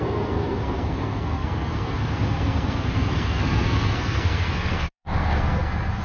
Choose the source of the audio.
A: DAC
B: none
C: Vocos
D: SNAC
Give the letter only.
D